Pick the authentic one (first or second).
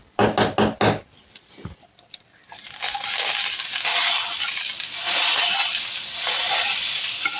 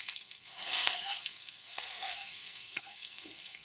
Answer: first